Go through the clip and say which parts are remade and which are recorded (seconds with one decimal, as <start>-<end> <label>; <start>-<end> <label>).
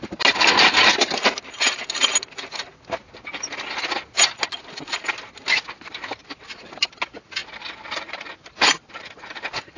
0.0-6.2 recorded; 6.2-6.9 remade; 6.9-7.4 recorded; 7.4-9.8 remade